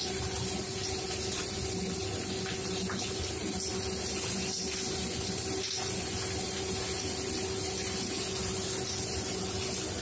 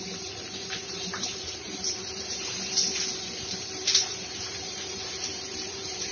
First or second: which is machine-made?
second